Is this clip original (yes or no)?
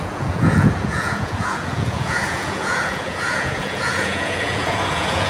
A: no